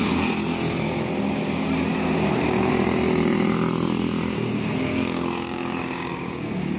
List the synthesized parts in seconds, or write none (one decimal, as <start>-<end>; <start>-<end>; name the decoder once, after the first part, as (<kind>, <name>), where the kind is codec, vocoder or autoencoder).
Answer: 1.9-2.7 (codec, DAC); 4.3-6.8